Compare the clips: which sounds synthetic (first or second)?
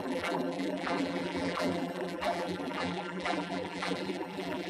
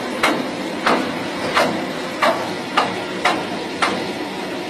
first